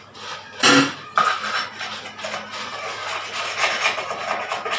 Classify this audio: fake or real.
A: real